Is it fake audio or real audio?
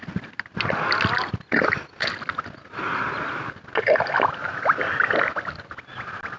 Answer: real